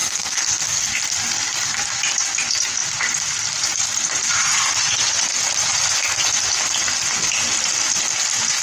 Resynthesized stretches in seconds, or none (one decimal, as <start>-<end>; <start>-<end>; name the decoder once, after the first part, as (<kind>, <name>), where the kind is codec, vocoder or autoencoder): 0.0-0.8 (codec, SNAC)